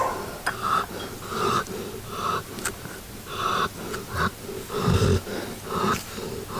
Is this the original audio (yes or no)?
yes